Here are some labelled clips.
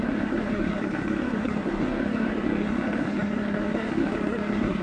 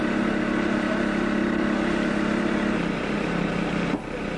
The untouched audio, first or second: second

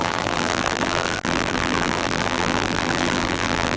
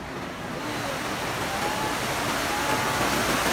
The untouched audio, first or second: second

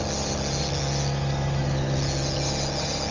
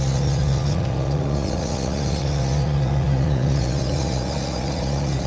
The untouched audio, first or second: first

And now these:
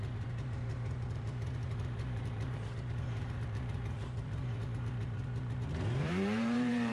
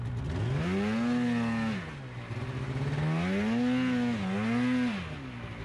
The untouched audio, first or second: second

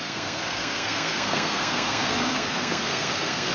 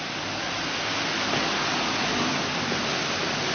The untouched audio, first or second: second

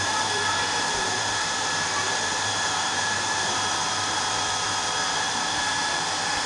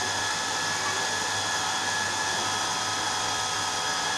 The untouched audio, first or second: second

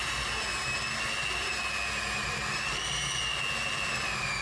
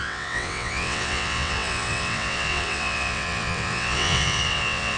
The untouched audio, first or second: first